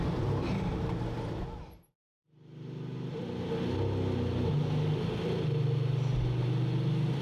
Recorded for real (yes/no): yes